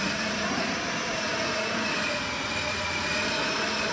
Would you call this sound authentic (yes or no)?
no